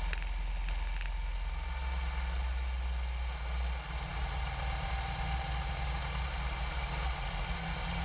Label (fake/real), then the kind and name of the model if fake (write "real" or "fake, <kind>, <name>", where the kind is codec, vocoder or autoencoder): real